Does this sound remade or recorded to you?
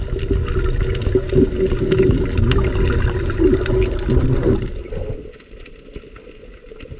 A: recorded